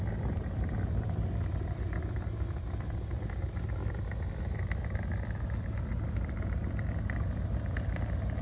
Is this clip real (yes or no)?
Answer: yes